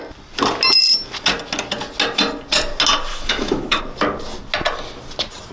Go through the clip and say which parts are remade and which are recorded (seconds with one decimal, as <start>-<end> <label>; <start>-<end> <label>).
0.0-3.1 recorded; 3.1-3.8 remade; 3.8-5.5 recorded